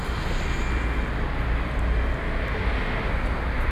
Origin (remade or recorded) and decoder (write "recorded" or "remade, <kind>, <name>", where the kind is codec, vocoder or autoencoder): recorded